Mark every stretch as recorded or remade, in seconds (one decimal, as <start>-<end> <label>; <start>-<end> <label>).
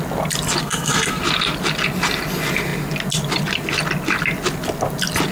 0.0-0.6 recorded; 0.6-1.2 remade; 1.2-5.3 recorded